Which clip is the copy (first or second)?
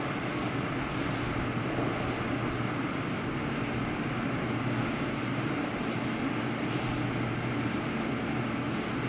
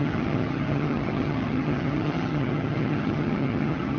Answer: second